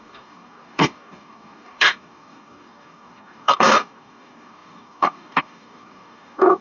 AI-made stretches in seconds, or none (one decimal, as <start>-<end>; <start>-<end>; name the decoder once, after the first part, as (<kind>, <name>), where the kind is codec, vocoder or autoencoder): 0.0-6.6 (codec, DAC)